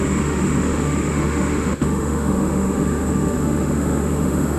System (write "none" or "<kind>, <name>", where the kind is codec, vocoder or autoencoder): autoencoder, DAC-VAE